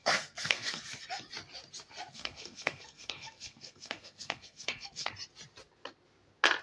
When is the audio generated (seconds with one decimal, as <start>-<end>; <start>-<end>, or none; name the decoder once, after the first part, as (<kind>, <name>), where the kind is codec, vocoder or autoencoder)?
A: 0.0-0.8 (codec, SNAC); 2.1-5.1